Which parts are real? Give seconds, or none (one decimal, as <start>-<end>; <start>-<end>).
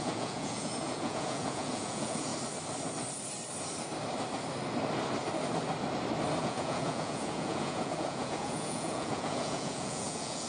2.3-6.4